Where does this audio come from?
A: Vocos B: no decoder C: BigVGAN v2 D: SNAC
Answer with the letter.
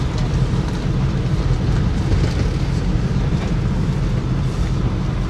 C